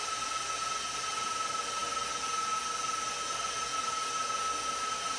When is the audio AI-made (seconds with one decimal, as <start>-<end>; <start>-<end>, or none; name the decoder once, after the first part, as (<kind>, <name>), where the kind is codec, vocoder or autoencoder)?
none